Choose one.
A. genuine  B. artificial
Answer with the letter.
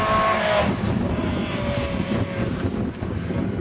A